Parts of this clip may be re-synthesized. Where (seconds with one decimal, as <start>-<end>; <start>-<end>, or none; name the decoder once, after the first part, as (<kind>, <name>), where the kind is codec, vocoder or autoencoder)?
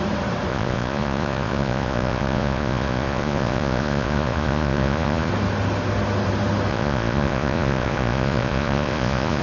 0.5-5.3 (vocoder, Vocos); 6.7-9.4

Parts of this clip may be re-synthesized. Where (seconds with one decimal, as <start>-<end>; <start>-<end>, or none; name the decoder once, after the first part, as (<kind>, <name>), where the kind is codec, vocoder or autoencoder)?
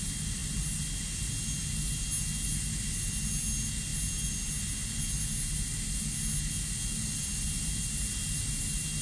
none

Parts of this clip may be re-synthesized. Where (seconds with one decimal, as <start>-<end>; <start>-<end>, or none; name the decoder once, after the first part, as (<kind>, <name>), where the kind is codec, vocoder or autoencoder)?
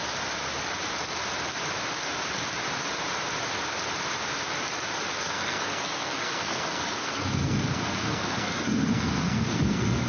5.2-10.1 (codec, SNAC)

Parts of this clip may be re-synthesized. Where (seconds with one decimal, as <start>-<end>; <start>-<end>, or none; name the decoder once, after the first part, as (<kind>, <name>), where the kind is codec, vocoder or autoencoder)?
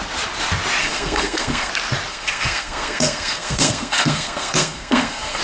0.8-1.7 (codec, SNAC); 2.1-5.4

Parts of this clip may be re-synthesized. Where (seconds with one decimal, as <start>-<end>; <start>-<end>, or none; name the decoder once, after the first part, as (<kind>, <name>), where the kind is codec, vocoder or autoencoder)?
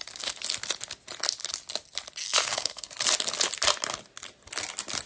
2.2-2.9 (codec, SNAC)